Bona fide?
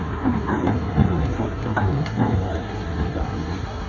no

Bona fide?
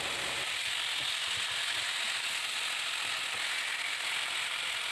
yes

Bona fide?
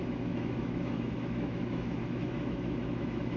no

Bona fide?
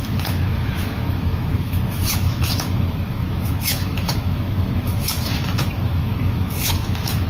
no